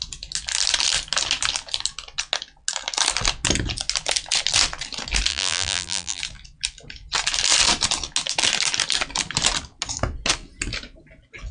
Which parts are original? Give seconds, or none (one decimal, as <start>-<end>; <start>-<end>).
0.0-5.3; 6.2-11.5